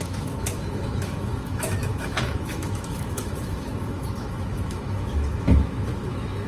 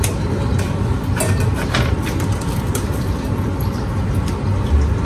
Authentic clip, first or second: second